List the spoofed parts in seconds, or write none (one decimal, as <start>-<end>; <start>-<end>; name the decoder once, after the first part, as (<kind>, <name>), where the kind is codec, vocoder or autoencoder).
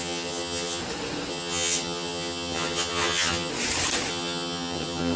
0.0-0.8 (vocoder, HiFi-GAN); 1.3-3.5; 4.1-5.2